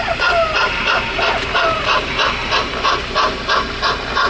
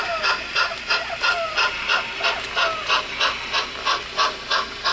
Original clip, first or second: second